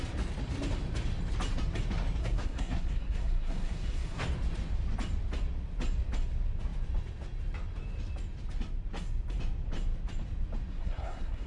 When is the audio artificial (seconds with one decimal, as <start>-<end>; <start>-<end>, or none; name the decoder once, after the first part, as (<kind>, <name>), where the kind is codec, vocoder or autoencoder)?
2.2-4.2 (codec, SNAC); 10.7-11.5